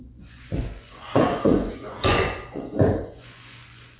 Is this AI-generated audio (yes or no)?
yes